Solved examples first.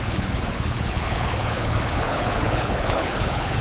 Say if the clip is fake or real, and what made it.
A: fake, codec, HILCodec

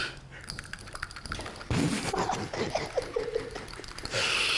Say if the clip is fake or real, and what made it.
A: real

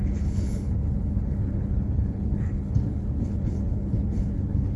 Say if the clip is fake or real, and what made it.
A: fake, codec, HILCodec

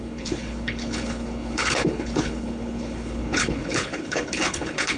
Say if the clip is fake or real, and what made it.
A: fake, codec, HILCodec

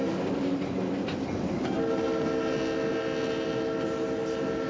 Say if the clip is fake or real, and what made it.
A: real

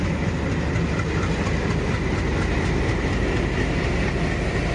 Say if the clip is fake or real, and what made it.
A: real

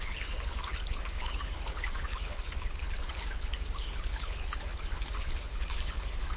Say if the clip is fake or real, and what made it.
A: fake, codec, HILCodec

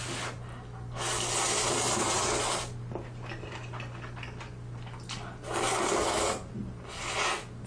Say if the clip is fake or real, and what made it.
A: real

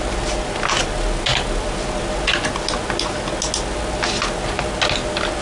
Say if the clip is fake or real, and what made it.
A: real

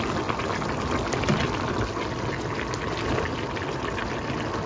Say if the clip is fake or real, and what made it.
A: real